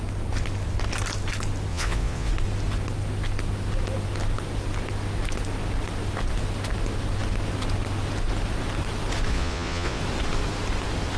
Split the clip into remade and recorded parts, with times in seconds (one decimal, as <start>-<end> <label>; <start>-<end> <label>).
0.0-1.7 recorded; 1.7-2.3 remade; 2.3-9.3 recorded; 9.3-10.0 remade; 10.0-11.2 recorded